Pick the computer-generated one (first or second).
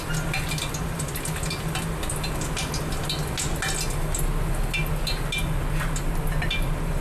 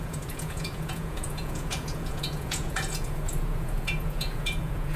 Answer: second